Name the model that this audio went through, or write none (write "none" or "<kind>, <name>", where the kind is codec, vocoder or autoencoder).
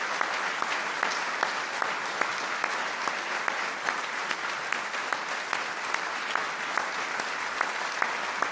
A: none